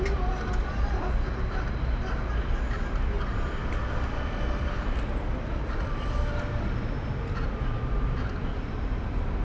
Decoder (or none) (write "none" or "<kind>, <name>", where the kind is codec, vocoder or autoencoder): none